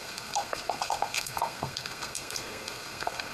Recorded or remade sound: remade